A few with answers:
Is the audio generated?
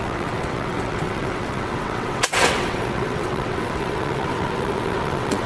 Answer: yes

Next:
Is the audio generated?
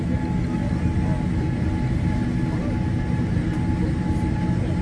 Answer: no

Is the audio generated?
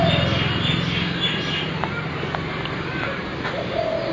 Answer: no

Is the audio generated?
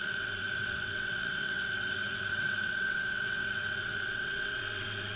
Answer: yes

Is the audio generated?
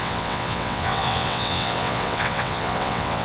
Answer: yes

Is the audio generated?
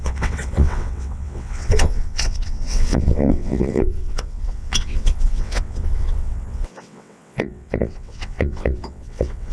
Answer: yes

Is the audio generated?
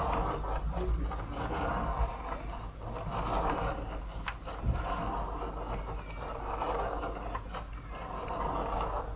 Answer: no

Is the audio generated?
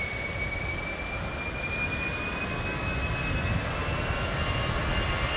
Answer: no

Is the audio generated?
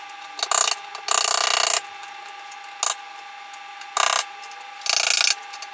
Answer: no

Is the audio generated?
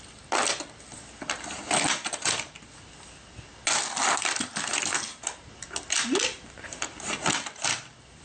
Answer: no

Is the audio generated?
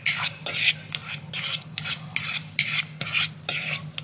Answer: no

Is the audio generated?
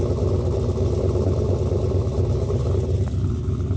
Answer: no